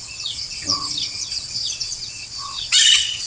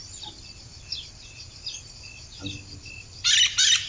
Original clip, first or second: second